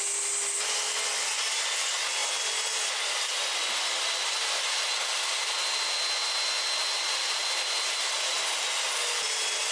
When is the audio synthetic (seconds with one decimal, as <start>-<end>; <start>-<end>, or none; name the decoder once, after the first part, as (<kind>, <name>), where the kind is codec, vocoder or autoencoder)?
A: none